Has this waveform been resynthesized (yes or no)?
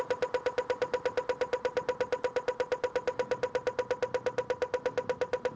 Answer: no